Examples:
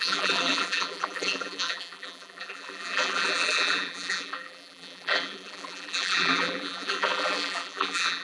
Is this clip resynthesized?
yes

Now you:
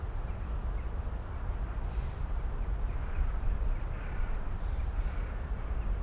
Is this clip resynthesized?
yes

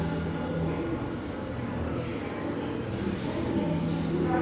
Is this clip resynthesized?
no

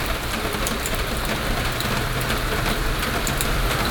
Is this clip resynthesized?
yes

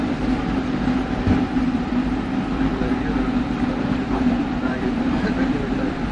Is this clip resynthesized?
yes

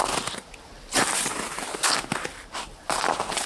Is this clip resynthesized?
no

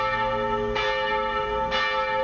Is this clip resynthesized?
no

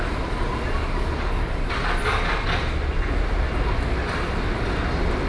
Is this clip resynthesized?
no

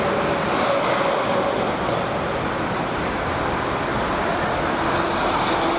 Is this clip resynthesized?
no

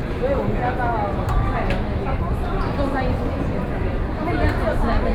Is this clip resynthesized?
no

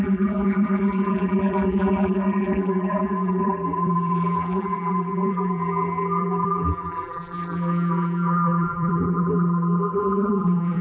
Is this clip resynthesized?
yes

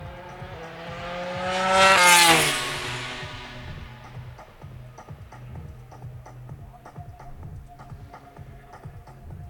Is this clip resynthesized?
no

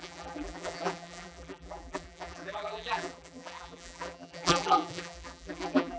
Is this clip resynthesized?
yes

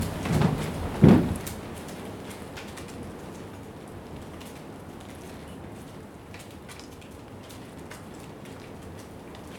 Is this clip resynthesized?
no